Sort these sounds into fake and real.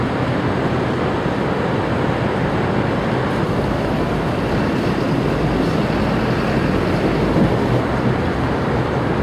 real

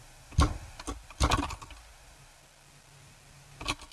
real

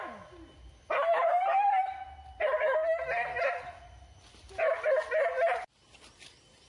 real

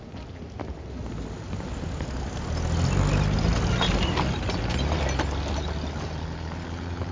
real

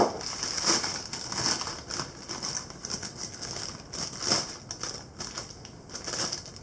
real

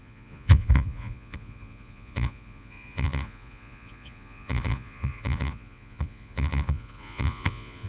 fake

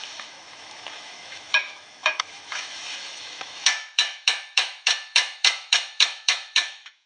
fake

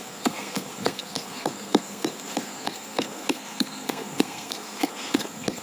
fake